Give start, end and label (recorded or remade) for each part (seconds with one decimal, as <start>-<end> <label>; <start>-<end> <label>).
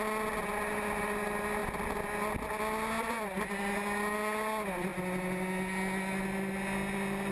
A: 0.0-7.3 recorded